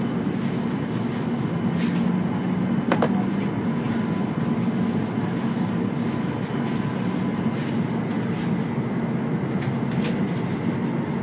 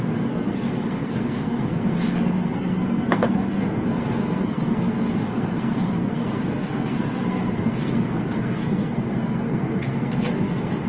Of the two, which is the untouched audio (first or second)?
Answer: first